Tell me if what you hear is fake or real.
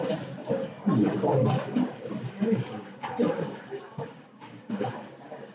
fake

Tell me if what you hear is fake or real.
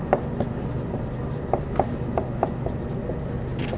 real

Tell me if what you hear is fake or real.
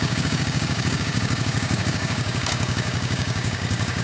fake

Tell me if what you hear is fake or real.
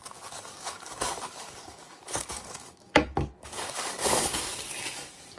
fake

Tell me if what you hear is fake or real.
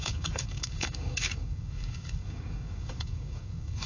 fake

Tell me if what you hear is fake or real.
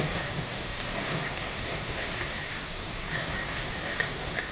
fake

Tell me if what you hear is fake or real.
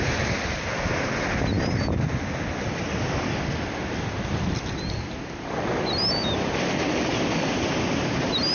real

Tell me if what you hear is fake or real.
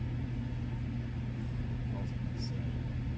real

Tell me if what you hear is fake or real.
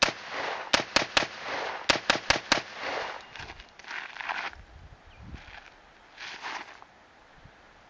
real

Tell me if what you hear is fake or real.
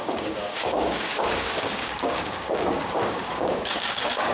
fake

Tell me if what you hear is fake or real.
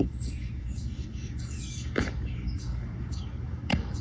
fake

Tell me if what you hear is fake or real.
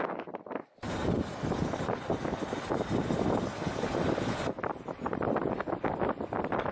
real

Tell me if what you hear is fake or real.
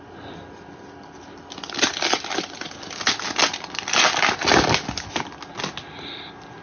real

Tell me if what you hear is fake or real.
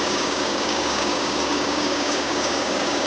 fake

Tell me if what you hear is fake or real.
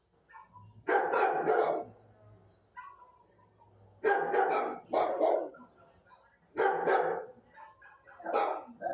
real